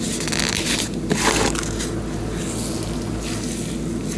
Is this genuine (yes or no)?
yes